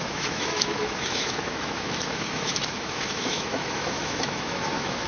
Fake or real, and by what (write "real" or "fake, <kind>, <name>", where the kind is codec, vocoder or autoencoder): fake, autoencoder, DAC-VAE